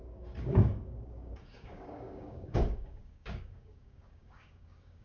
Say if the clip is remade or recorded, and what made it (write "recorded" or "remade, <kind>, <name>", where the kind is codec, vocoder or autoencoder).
remade, codec, DAC